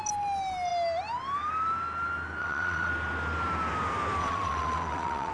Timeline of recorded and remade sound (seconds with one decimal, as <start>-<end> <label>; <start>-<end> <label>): 0.0-2.4 recorded; 2.4-2.9 remade; 2.9-4.2 recorded; 4.2-5.3 remade